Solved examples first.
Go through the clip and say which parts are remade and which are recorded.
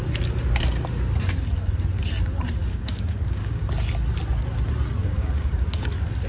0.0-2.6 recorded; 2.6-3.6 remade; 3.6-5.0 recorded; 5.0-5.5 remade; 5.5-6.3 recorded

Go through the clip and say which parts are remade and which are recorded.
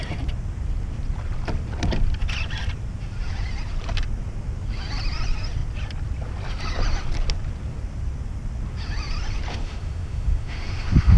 0.0-9.5 recorded; 9.5-11.2 remade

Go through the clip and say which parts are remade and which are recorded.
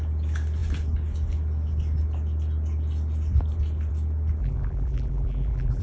0.0-4.4 recorded; 4.4-5.8 remade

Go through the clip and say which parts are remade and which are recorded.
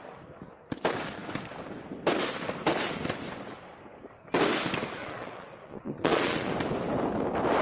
0.0-5.0 recorded; 5.0-6.5 remade; 6.5-7.6 recorded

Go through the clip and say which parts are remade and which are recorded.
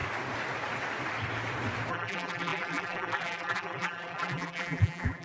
0.0-1.9 recorded; 1.9-5.2 remade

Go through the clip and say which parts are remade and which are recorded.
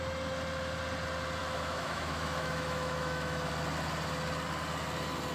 0.0-1.4 recorded; 1.4-3.5 remade; 3.5-5.3 recorded